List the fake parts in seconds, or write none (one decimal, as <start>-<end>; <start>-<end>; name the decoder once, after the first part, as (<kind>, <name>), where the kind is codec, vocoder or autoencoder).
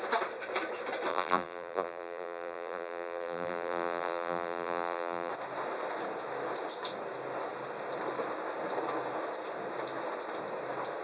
1.1-5.3 (vocoder, BigVGAN v2)